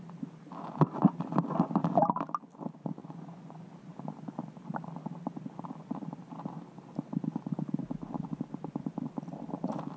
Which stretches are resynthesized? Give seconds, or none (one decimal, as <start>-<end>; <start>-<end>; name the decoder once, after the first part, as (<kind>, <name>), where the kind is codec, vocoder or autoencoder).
3.0-3.7 (vocoder, Vocos)